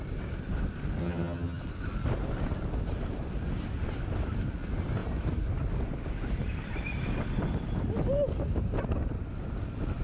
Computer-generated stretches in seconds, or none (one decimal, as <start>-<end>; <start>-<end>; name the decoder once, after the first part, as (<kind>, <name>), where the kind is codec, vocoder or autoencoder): 1.0-1.6 (vocoder, HiFi-GAN)